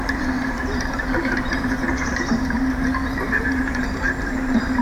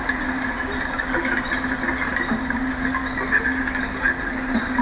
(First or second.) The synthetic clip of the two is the first